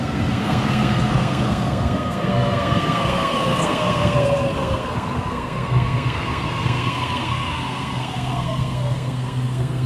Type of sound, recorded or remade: remade